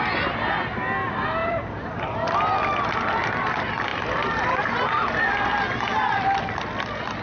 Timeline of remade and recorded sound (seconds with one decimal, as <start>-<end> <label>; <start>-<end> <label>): 0.0-1.4 recorded; 1.4-2.8 remade; 2.8-3.9 recorded; 3.9-4.6 remade; 4.6-7.2 recorded

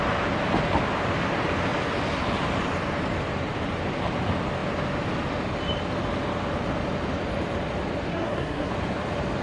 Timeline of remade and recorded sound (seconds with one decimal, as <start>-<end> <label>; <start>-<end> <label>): 0.0-8.1 recorded; 8.1-8.7 remade; 8.7-9.4 recorded

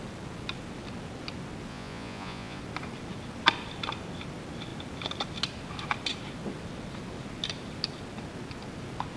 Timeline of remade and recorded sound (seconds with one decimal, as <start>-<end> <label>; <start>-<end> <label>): 0.0-1.7 recorded; 1.7-2.6 remade; 2.6-9.2 recorded

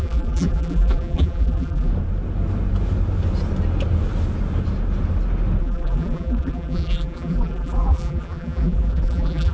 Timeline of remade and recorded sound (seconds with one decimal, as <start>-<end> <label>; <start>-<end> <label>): 0.0-1.9 remade; 1.9-5.6 recorded; 5.6-9.5 remade